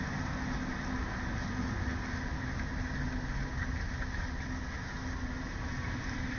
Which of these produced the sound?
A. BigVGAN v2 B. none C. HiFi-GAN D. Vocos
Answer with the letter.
B